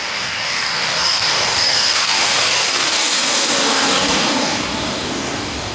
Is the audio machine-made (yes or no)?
yes